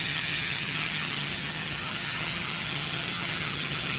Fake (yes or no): yes